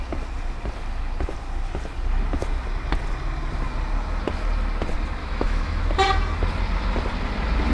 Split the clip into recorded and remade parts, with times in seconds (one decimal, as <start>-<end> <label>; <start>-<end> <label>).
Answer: 0.0-5.2 recorded; 5.2-5.8 remade; 5.8-7.7 recorded